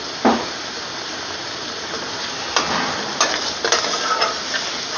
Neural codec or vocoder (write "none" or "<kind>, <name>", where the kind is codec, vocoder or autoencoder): none